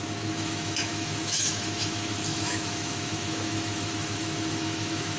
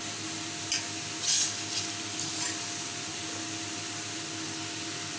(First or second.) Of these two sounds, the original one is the second